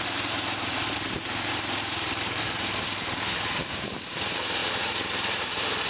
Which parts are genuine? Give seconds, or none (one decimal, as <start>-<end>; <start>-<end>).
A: none